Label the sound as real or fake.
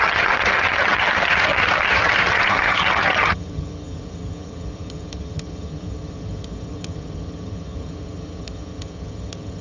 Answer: fake